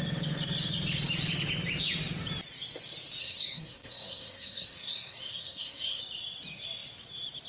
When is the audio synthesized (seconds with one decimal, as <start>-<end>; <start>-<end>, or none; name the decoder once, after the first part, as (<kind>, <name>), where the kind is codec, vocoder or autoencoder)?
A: 3.2-6.0 (codec, SNAC)